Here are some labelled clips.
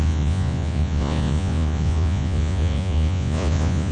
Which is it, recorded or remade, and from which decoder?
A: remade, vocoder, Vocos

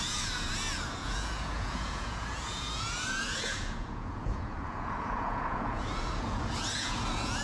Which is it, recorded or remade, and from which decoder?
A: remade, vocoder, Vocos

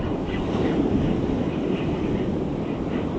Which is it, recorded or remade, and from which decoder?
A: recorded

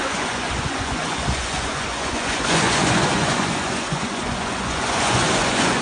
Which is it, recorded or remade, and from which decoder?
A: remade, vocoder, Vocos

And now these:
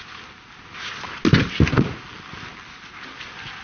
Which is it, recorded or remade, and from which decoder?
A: recorded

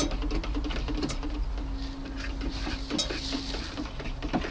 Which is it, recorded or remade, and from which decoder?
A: recorded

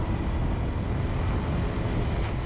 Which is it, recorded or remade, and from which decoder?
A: recorded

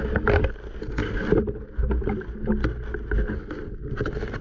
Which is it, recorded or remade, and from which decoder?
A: recorded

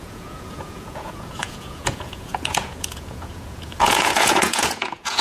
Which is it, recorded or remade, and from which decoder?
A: remade, vocoder, Vocos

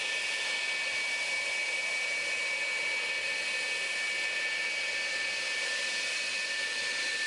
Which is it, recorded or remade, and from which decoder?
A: recorded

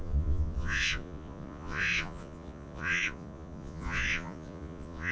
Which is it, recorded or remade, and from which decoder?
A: remade, vocoder, Vocos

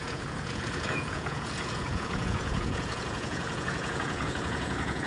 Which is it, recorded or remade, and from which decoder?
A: remade, vocoder, Vocos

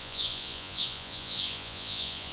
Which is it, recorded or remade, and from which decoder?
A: remade, vocoder, Vocos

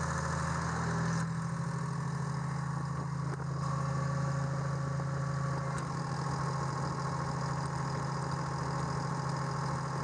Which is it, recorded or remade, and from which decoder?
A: recorded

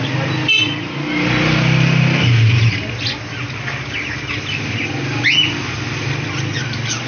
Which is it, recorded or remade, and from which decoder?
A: recorded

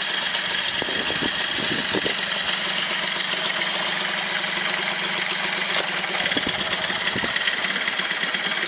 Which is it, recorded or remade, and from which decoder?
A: recorded